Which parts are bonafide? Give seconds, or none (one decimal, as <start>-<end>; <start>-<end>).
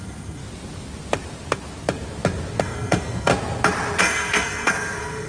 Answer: 0.4-2.6; 3.3-4.0